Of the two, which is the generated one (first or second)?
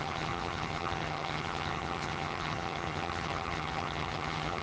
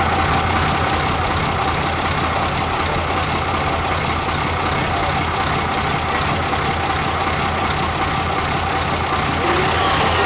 first